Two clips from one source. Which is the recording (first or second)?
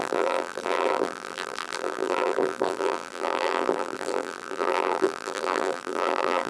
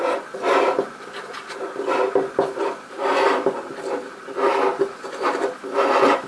second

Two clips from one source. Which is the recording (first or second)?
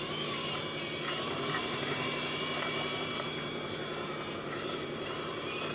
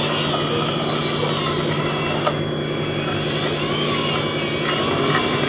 second